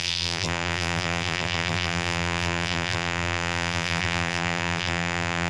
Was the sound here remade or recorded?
remade